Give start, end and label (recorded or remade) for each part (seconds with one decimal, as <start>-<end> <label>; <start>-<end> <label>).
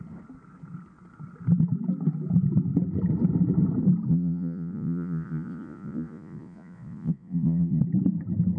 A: 0.0-4.1 recorded; 4.1-7.8 remade; 7.8-8.6 recorded